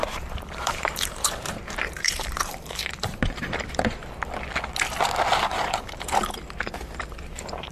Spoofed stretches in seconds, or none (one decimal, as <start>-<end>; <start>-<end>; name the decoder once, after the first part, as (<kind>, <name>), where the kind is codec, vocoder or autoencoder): 0.0-4.0 (vocoder, BigVGAN v2); 5.5-7.7